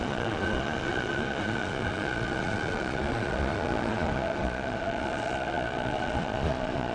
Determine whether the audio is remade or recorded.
remade